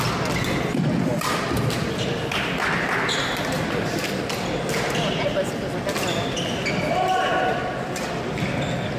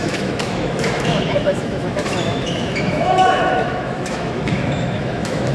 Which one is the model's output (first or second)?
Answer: second